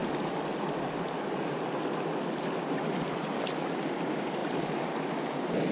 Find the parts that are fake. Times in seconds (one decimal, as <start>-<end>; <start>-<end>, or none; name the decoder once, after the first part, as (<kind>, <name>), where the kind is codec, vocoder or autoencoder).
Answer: none